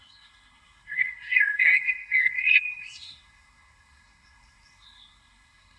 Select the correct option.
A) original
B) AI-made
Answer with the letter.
B